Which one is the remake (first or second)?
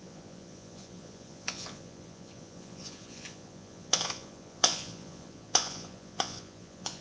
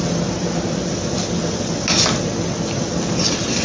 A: first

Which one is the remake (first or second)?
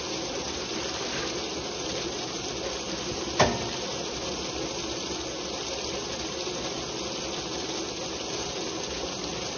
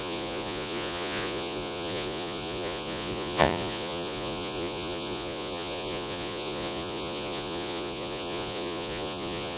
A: second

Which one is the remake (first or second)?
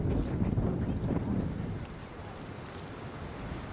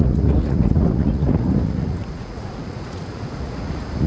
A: second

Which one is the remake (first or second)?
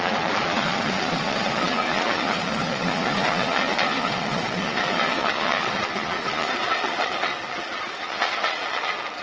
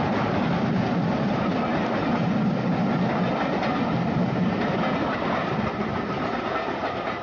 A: first